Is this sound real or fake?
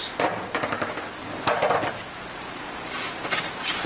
real